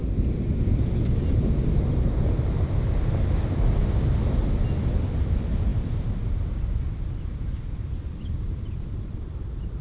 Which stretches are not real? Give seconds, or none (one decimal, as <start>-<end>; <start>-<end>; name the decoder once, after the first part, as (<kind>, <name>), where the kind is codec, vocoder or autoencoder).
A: none